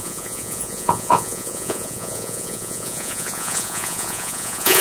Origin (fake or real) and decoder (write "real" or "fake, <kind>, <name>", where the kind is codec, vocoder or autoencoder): fake, vocoder, Vocos